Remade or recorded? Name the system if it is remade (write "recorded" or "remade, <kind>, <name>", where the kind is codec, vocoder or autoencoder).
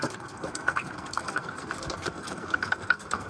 remade, codec, SNAC